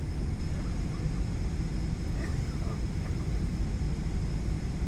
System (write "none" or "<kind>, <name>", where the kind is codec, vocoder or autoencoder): none